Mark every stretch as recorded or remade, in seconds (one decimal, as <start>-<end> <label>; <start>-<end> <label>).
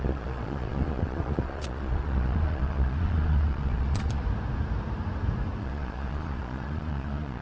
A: 0.0-4.2 remade; 4.2-5.6 recorded; 5.6-7.4 remade